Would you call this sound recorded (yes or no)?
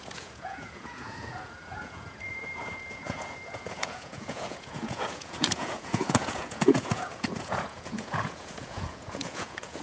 no